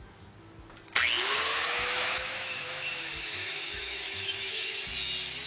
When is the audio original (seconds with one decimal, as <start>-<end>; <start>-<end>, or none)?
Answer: 0.0-1.5; 4.8-5.5

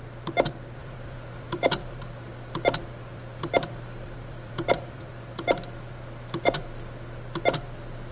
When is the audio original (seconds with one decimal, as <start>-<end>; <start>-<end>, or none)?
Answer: 0.0-0.8; 2.1-3.1; 5.4-8.1

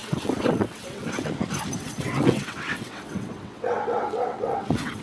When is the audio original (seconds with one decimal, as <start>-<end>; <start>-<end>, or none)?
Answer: 1.3-1.8